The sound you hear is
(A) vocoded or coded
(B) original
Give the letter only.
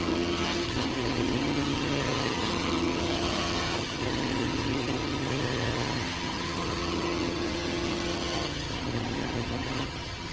A